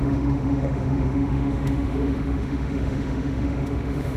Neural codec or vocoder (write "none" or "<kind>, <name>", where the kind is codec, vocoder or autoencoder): autoencoder, DAC-VAE